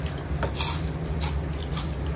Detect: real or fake real